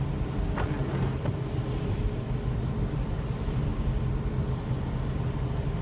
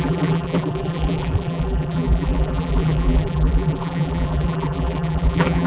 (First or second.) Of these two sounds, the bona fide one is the first